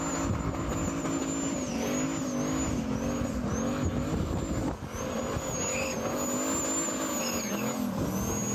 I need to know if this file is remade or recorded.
recorded